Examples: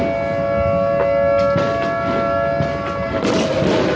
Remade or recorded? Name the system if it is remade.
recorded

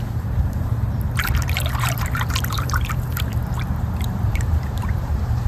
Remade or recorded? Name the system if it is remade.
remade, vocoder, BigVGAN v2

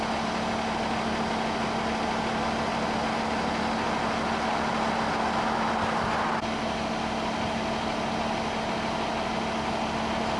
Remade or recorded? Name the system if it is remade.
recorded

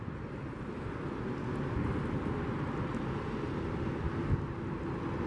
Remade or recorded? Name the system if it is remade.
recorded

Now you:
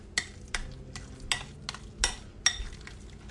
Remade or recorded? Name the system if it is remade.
recorded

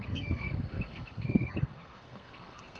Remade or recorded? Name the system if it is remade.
remade, codec, SNAC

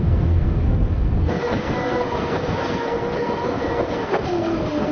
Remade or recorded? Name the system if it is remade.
remade, codec, SNAC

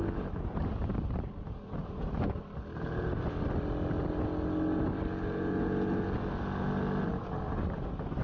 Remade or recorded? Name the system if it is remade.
recorded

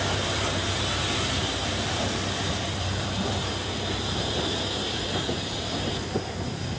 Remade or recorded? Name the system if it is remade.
remade, vocoder, BigVGAN v2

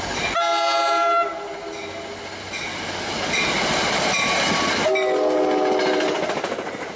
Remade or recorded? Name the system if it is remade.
recorded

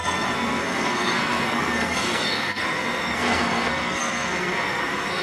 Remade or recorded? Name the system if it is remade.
remade, codec, SNAC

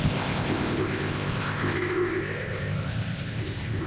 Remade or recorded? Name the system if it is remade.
remade, codec, ZipCodec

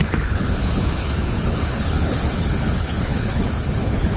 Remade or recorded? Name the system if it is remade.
remade, codec, HILCodec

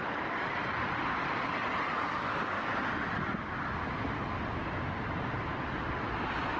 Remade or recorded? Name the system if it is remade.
recorded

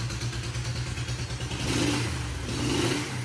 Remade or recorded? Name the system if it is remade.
recorded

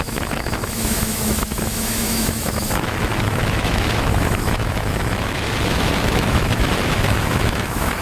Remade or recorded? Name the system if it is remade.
remade, autoencoder, DAC-VAE